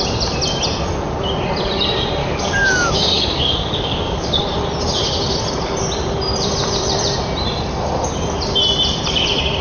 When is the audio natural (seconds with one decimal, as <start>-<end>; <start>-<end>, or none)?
0.0-2.2; 4.4-9.6